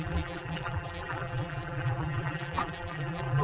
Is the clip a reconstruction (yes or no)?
yes